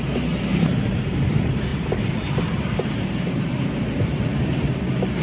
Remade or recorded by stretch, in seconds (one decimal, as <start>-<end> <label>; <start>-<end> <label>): 0.0-0.5 recorded; 0.5-1.1 remade; 1.1-1.7 recorded; 1.7-4.8 remade; 4.8-5.2 recorded